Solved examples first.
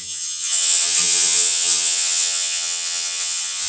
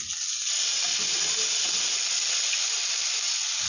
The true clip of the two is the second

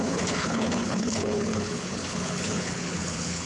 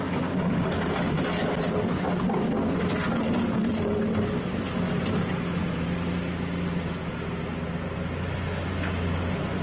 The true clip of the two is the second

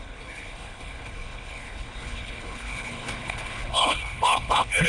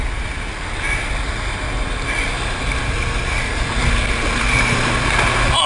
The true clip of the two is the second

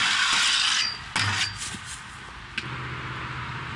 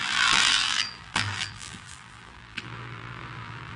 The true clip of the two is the first